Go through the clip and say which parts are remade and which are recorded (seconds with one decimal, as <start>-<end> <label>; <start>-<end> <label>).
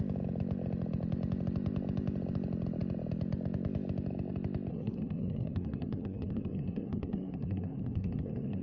0.0-4.7 recorded; 4.7-8.6 remade